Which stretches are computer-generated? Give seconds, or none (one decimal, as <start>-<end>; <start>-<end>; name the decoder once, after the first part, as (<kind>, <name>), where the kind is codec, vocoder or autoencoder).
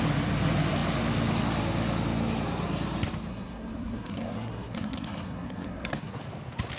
3.3-6.2 (codec, SNAC)